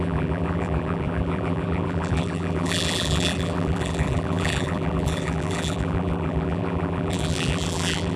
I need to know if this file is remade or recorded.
remade